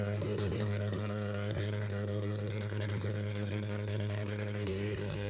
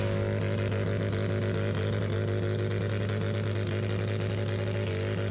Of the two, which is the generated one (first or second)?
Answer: first